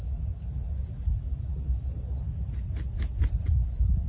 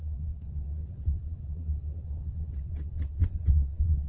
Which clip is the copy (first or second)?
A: second